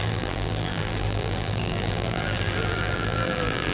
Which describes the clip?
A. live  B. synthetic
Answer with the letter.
B